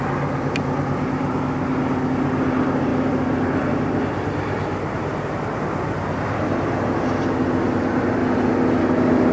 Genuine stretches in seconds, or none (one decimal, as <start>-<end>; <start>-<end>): 0.0-9.3